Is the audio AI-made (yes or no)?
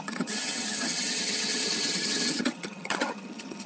yes